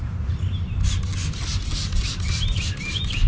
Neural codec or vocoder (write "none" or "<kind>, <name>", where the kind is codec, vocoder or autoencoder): none